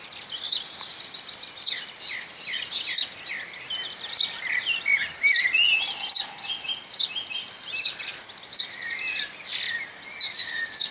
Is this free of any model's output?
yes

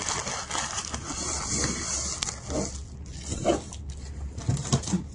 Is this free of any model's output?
yes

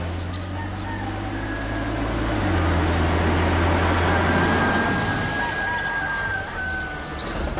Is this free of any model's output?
yes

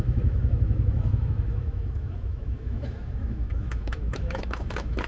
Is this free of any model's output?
no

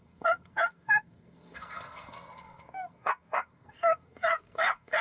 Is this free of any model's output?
no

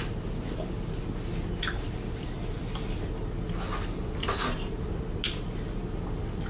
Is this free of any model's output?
yes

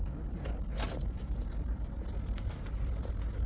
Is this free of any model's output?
yes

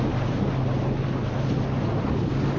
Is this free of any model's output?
yes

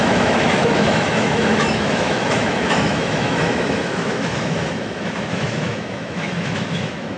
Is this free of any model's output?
no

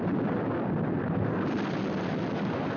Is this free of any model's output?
yes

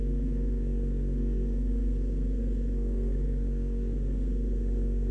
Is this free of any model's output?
no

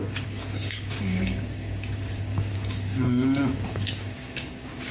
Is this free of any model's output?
no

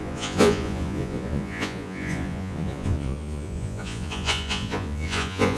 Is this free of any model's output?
no